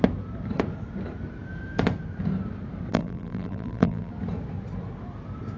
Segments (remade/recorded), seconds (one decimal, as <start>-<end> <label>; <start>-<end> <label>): 0.0-2.9 recorded; 2.9-4.1 remade; 4.1-5.6 recorded